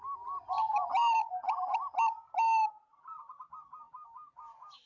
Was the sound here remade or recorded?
recorded